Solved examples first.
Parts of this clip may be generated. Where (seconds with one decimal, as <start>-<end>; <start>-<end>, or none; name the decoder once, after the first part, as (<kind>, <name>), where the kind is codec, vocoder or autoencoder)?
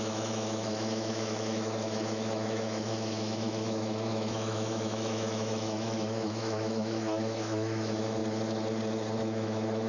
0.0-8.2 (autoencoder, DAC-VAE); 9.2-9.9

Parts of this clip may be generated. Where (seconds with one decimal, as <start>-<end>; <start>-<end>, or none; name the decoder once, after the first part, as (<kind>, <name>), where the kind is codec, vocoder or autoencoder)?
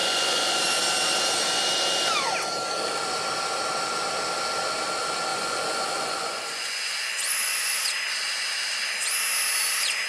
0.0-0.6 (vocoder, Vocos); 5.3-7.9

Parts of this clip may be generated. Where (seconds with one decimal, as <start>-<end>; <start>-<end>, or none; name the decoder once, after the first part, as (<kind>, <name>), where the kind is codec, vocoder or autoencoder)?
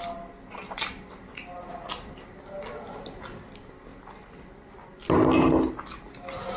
none